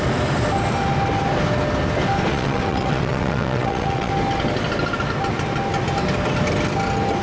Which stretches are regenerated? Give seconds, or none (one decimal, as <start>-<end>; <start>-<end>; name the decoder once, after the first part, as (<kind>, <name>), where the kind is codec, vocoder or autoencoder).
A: 2.3-4.1 (vocoder, WaveNeXt)